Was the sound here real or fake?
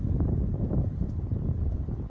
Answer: fake